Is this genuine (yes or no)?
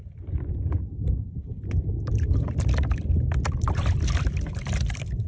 no